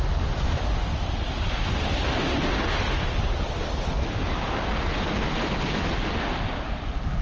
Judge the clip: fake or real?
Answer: real